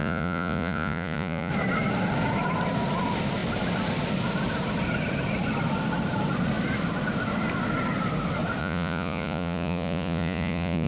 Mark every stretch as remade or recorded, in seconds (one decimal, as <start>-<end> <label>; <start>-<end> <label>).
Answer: 0.0-1.5 remade; 1.5-8.6 recorded; 8.6-10.9 remade